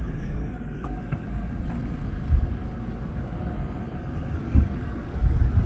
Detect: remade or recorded remade